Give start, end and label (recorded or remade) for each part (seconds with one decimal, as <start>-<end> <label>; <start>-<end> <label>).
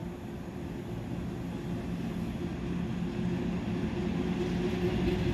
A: 0.0-5.3 recorded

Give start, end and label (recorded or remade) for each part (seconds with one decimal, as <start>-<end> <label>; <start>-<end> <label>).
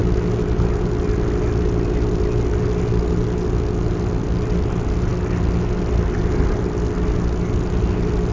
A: 0.0-8.3 recorded